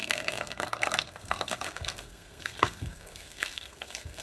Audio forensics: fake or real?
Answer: fake